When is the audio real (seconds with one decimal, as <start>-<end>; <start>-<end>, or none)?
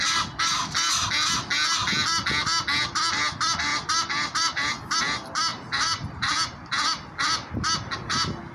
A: 0.0-3.7; 5.0-5.5; 7.5-8.5